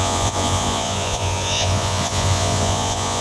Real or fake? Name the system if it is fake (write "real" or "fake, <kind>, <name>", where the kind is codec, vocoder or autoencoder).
fake, vocoder, Vocos